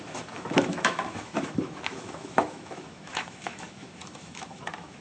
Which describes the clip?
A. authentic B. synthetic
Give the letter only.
B